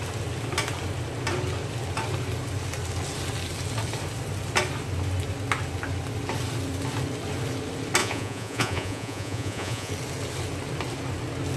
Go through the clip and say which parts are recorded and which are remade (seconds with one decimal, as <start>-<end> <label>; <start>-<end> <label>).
0.0-8.0 recorded; 8.0-9.9 remade; 9.9-11.6 recorded